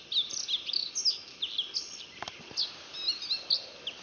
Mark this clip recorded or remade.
recorded